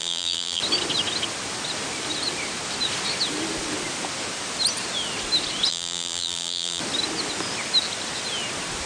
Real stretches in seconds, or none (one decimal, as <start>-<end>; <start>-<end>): 0.6-5.7; 6.8-8.9